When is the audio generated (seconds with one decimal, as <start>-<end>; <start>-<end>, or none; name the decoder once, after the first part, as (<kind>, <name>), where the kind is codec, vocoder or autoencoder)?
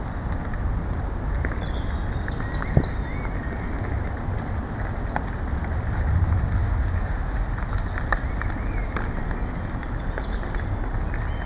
6.6-7.1 (codec, DAC)